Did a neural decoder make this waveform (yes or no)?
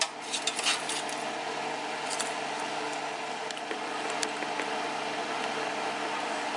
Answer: no